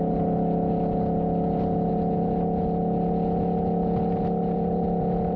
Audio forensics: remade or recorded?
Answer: recorded